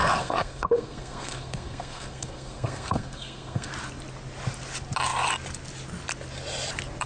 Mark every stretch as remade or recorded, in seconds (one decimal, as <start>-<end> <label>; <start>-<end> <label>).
0.0-3.7 remade; 3.7-7.1 recorded